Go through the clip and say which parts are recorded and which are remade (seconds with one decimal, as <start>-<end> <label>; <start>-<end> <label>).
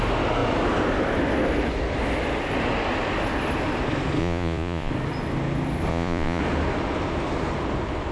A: 0.0-4.2 recorded; 4.2-4.9 remade; 4.9-5.9 recorded; 5.9-6.4 remade; 6.4-8.1 recorded